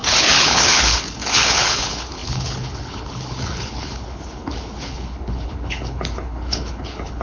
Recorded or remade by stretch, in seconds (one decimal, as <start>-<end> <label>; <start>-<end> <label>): 0.0-7.2 remade